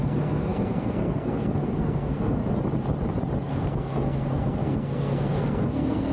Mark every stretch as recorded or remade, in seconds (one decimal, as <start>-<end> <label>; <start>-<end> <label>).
0.0-2.4 remade; 2.4-3.5 recorded; 3.5-6.1 remade